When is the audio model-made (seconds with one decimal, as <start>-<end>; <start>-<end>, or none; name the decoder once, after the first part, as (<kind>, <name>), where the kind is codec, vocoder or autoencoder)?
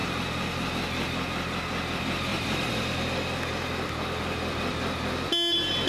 0.0-0.7 (vocoder, BigVGAN v2); 2.3-3.0